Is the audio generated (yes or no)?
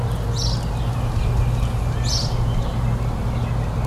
no